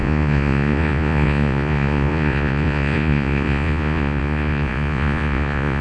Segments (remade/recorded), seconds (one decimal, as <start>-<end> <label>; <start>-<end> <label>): 0.0-5.8 remade

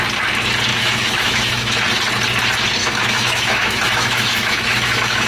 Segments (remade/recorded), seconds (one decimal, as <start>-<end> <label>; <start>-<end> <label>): 0.0-0.7 recorded; 0.7-1.8 remade; 1.8-2.8 recorded; 2.8-5.3 remade

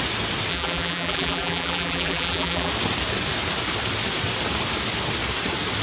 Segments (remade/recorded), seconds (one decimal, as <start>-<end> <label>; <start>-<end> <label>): 0.0-0.5 recorded; 0.5-2.7 remade; 2.7-5.8 recorded

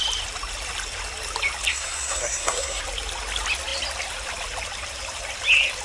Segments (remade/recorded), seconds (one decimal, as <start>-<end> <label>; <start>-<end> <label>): 0.0-1.7 recorded; 1.7-2.8 remade; 2.8-5.8 recorded

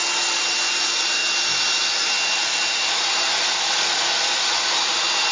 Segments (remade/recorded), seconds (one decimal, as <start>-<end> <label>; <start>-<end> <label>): 0.0-5.3 recorded

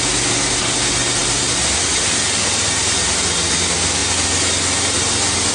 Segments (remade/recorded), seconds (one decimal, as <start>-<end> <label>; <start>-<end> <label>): 0.0-5.5 recorded

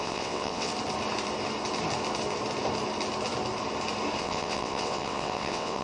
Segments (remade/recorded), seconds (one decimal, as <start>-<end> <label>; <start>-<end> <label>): 0.0-0.7 remade; 0.7-4.2 recorded; 4.2-5.8 remade

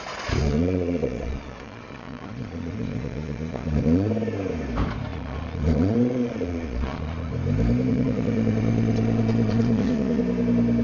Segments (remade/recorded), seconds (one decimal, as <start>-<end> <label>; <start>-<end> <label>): 0.0-0.4 recorded; 0.4-4.1 remade; 4.1-5.1 recorded; 5.1-7.3 remade; 7.3-7.9 recorded; 7.9-10.2 remade; 10.2-10.8 recorded